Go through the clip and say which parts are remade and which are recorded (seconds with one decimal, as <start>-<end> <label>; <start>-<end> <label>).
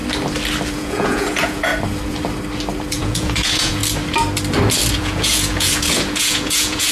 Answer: 0.0-0.7 recorded; 0.7-1.7 remade; 1.7-2.9 recorded; 2.9-3.8 remade; 3.8-4.9 recorded; 4.9-6.9 remade